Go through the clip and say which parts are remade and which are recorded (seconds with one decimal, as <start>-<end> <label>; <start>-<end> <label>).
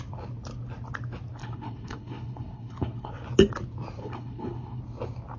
0.0-1.4 recorded; 1.4-3.1 remade; 3.1-4.0 recorded; 4.0-4.8 remade; 4.8-5.4 recorded